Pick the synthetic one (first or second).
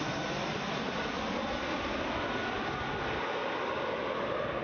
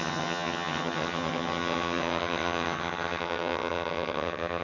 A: second